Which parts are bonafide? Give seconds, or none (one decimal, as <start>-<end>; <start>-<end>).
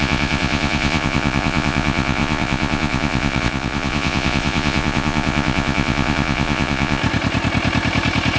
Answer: 7.0-8.4